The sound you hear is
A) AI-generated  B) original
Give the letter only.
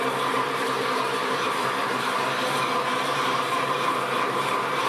A